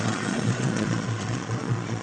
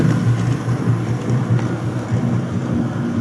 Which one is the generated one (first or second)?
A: first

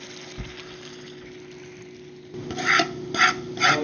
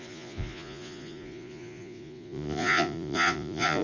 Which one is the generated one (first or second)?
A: second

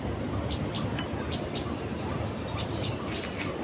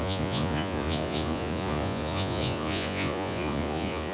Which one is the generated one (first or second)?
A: second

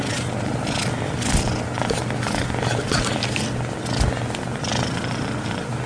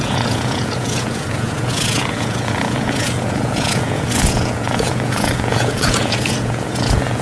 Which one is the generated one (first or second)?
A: second